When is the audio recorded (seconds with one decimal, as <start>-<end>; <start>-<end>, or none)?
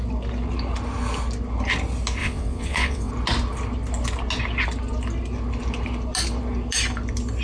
0.0-2.2; 3.1-7.4